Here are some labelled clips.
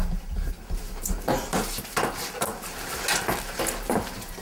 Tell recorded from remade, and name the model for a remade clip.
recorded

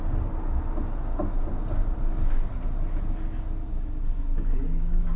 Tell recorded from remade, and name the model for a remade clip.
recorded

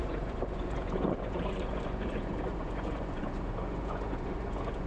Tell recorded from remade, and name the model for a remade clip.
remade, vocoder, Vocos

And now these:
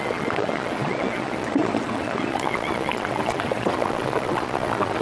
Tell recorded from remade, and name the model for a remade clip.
remade, vocoder, Vocos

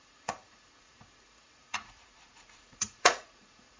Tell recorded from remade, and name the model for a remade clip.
remade, vocoder, Vocos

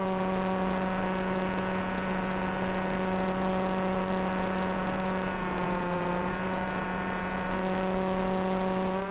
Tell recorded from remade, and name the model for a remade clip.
remade, vocoder, Vocos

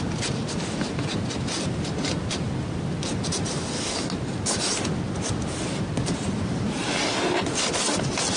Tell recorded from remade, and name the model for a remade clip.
recorded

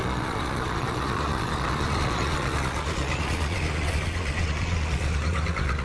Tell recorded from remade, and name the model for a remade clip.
remade, vocoder, Vocos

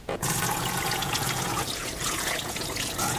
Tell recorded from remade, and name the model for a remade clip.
remade, vocoder, Vocos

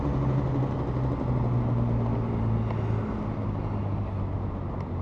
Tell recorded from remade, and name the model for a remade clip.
recorded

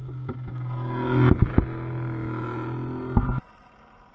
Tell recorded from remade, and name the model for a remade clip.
recorded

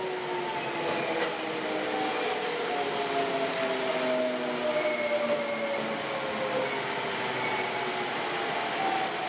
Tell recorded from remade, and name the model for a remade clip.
recorded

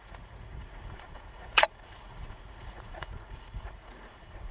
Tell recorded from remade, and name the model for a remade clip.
remade, vocoder, Vocos